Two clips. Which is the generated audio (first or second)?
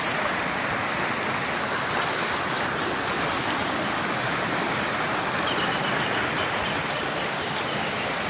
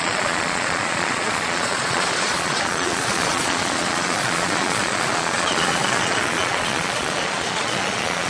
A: second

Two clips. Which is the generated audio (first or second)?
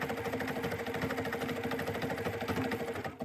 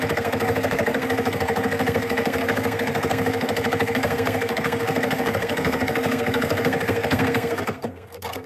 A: second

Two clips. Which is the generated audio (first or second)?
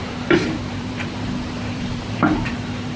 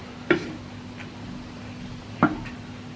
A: first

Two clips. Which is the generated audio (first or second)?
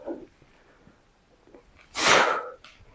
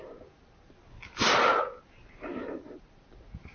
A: second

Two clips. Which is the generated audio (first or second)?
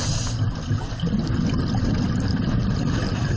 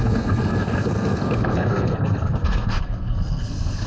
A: second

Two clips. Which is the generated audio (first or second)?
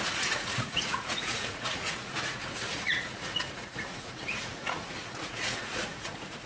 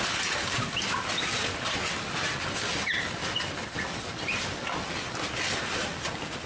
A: first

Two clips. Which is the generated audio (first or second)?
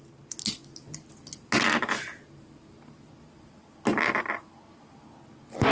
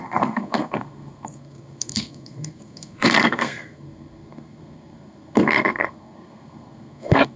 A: second